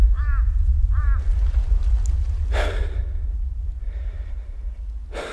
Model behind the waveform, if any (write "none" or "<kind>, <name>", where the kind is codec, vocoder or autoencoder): none